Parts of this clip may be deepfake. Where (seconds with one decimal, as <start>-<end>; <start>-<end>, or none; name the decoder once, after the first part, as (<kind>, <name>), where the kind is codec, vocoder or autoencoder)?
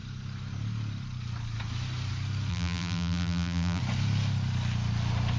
2.5-3.8 (vocoder, BigVGAN v2)